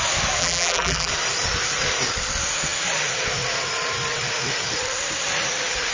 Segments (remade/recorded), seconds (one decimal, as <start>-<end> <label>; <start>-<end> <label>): 0.0-0.4 recorded; 0.4-1.1 remade; 1.1-5.9 recorded